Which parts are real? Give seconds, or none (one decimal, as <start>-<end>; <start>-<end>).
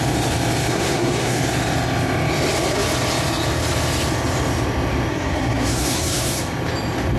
0.0-0.7; 1.4-5.1; 6.4-7.2